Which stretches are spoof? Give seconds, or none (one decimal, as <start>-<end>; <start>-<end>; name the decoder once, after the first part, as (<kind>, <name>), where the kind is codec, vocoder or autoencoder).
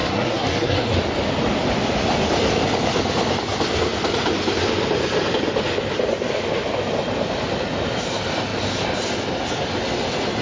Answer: 0.0-0.9 (codec, SNAC)